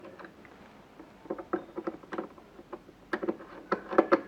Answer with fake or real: real